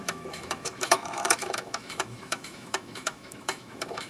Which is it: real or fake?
fake